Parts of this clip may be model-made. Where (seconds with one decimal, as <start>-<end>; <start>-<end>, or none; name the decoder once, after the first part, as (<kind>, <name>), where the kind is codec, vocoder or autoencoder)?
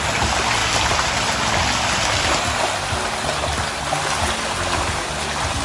none